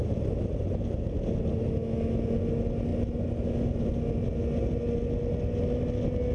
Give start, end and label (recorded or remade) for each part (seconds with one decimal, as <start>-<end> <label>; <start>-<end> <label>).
0.0-6.3 recorded